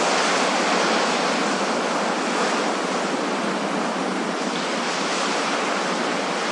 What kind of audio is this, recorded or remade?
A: recorded